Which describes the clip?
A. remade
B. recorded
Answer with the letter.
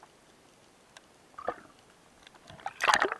B